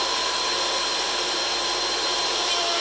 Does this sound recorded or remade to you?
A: remade